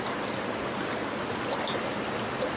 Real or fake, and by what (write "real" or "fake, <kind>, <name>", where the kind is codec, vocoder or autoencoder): real